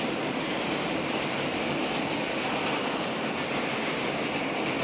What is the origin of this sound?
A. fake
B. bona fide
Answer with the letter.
B